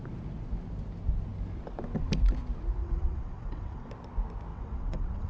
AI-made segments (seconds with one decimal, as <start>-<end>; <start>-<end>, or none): 2.8-3.9; 4.5-5.3